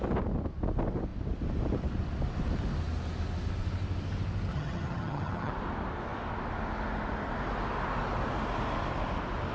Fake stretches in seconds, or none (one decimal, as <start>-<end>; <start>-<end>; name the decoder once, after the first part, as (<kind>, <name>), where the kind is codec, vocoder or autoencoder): 4.5-5.5 (vocoder, HiFi-GAN)